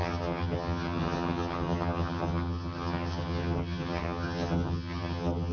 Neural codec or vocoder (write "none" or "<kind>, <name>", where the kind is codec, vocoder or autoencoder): vocoder, HiFi-GAN